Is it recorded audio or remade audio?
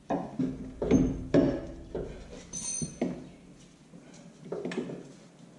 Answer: recorded